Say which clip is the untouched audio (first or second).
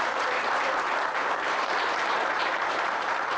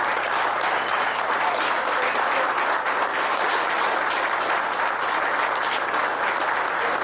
second